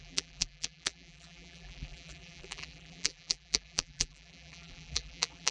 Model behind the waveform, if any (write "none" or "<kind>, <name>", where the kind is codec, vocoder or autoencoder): vocoder, BigVGAN v2